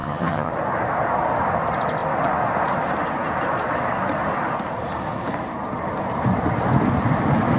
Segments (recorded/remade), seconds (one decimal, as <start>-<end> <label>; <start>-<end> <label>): 0.0-0.5 remade; 0.5-7.6 recorded